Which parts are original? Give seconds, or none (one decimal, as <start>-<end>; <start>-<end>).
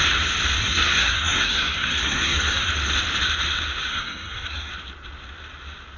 0.0-0.6; 2.7-3.9; 4.7-6.0